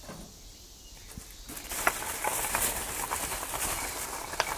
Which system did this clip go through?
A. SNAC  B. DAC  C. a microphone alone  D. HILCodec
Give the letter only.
C